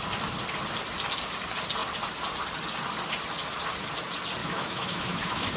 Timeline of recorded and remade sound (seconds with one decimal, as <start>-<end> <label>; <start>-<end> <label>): 0.0-4.4 recorded; 4.4-5.6 remade